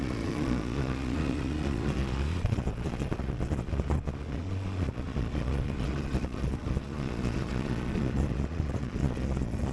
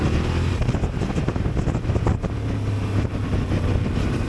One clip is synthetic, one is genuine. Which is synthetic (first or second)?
first